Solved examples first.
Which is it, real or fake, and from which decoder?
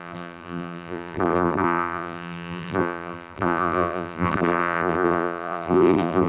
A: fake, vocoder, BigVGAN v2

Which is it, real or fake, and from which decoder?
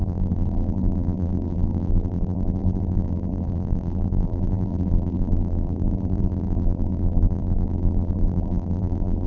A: fake, vocoder, BigVGAN v2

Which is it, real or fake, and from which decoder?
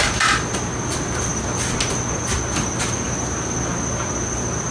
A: real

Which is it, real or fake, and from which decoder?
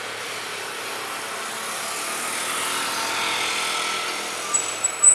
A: real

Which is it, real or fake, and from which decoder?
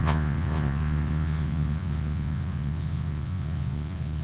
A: fake, vocoder, Vocos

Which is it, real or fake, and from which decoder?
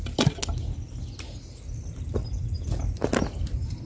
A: real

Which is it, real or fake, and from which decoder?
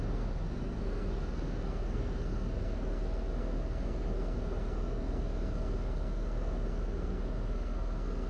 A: fake, codec, SNAC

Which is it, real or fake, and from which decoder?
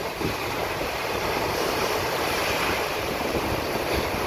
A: fake, vocoder, BigVGAN v2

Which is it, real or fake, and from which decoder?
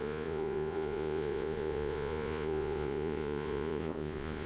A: fake, vocoder, Vocos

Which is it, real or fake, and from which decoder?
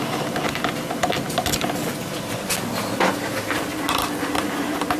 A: real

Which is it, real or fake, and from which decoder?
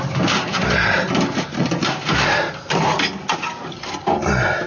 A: real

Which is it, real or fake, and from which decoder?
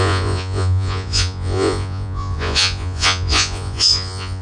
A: fake, vocoder, Vocos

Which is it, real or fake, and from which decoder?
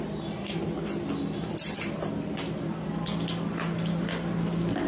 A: real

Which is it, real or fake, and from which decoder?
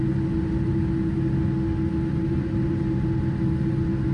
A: real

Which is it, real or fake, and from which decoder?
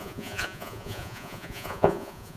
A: fake, vocoder, Vocos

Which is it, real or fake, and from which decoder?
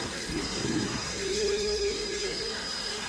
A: fake, codec, SNAC